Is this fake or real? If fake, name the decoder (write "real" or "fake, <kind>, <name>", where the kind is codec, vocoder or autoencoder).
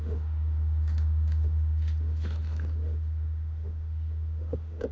fake, autoencoder, DAC-VAE